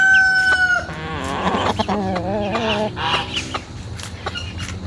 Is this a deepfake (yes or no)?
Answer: no